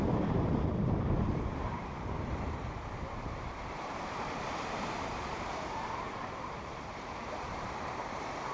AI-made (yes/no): yes